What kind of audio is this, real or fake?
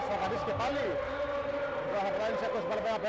real